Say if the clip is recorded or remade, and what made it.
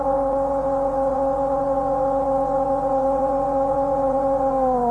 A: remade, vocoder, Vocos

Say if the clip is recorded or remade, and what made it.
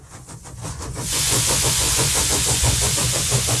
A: remade, vocoder, Vocos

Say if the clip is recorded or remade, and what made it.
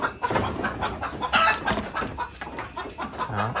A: recorded